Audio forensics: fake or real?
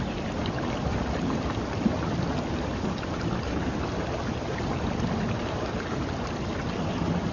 real